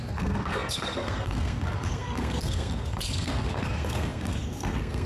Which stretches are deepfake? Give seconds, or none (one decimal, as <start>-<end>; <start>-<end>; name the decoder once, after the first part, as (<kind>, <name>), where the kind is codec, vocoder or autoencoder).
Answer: 0.0-5.1 (codec, SNAC)